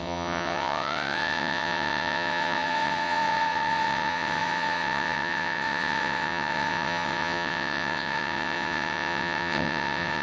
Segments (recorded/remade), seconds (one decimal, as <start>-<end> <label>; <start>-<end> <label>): 0.0-10.2 remade